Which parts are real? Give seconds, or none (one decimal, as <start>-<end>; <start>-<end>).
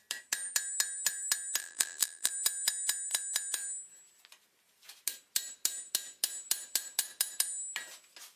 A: 0.0-1.6; 2.3-8.4